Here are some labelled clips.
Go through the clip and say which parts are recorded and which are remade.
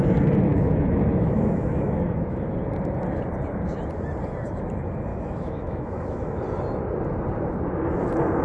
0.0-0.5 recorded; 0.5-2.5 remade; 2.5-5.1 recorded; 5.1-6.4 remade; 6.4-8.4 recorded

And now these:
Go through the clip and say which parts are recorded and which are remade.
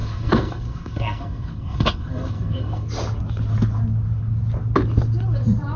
0.0-2.9 remade; 2.9-5.8 recorded